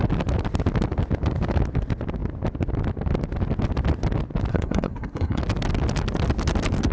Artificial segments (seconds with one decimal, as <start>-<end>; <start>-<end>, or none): 4.5-5.4